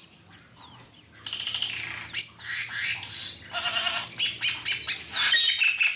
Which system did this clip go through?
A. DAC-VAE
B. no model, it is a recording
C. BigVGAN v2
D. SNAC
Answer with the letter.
B